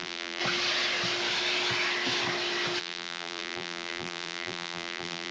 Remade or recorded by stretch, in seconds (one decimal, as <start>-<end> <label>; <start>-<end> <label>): 0.0-0.4 remade; 0.4-2.8 recorded; 2.8-5.3 remade